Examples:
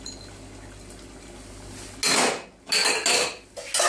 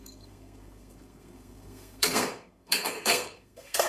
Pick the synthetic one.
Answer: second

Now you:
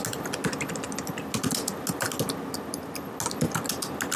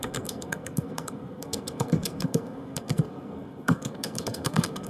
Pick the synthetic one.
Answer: second